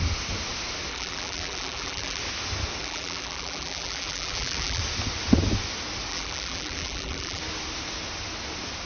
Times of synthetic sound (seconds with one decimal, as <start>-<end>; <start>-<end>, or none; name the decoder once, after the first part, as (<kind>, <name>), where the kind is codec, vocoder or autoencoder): 0.9-2.2 (vocoder, BigVGAN v2); 2.8-4.8; 6.1-7.4